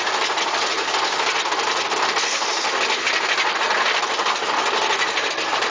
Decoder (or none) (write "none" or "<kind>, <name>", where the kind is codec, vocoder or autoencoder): none